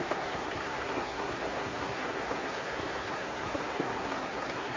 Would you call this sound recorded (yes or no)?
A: no